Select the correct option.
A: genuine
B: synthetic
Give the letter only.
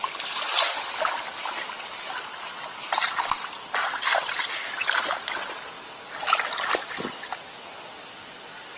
A